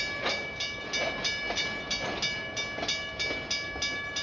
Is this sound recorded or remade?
recorded